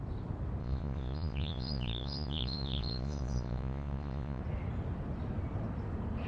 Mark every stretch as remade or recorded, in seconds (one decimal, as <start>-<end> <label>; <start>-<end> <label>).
0.0-0.6 recorded; 0.6-4.4 remade; 4.4-6.3 recorded